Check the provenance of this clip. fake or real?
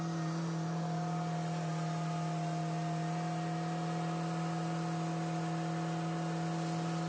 real